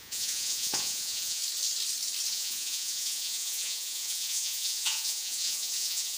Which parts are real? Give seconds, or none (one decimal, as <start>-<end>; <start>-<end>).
1.4-2.3